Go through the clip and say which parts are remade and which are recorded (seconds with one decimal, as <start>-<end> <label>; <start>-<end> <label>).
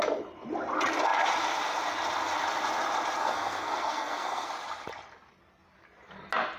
0.0-3.2 recorded; 3.2-4.5 remade; 4.5-6.6 recorded